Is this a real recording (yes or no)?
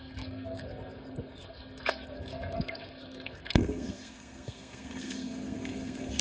no